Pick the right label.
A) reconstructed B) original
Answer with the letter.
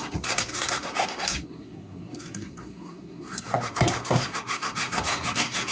A